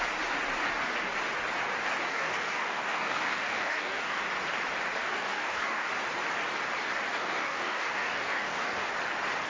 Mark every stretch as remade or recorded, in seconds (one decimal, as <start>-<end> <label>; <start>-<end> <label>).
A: 0.0-2.1 recorded; 2.1-4.2 remade; 4.2-5.0 recorded; 5.0-5.9 remade; 5.9-7.1 recorded; 7.1-8.9 remade; 8.9-9.5 recorded